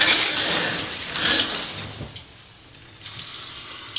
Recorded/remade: recorded